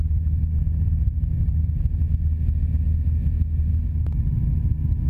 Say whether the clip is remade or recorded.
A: recorded